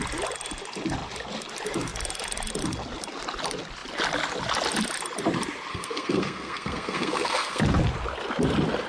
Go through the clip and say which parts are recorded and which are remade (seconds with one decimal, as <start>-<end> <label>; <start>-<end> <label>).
0.0-5.7 recorded; 5.7-7.6 remade; 7.6-8.9 recorded